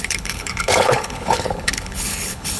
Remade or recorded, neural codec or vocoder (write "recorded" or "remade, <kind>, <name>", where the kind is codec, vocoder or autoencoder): remade, codec, HILCodec